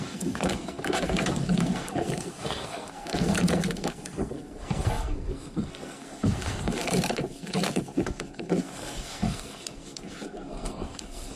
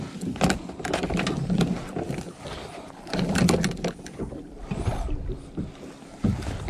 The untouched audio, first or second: second